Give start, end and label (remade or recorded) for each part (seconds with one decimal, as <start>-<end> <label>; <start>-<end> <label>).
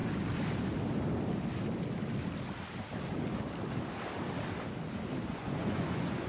0.0-5.3 recorded; 5.3-6.3 remade